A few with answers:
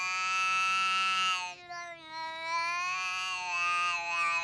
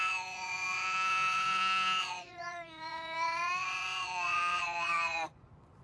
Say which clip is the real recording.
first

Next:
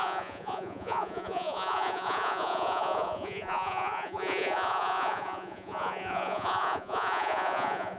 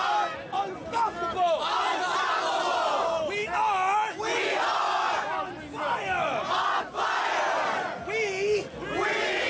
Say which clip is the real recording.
second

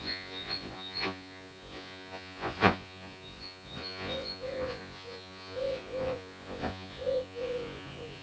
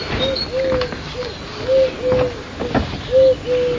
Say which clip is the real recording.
second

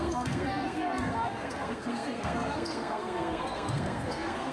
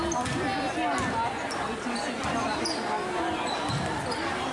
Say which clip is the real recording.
second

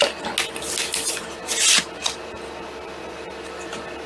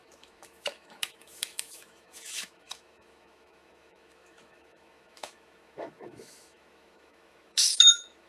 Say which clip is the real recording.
first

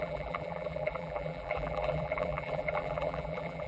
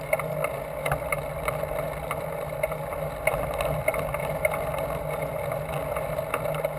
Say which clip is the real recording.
second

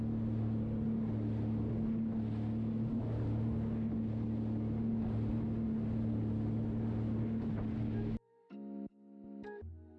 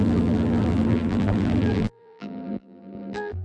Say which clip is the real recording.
first